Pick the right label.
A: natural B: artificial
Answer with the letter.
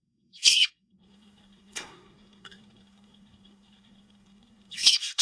B